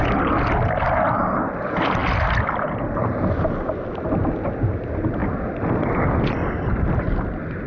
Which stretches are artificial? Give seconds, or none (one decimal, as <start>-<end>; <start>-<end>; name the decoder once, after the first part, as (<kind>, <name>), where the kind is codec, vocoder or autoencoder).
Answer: none

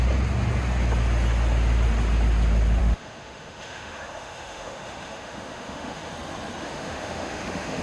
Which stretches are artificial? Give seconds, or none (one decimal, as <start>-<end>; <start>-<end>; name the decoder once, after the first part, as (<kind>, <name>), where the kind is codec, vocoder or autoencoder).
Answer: 2.8-6.1 (autoencoder, DAC-VAE); 6.6-7.8